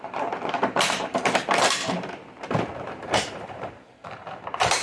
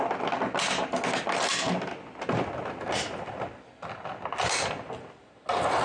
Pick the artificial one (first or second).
first